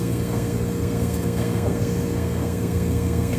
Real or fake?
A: fake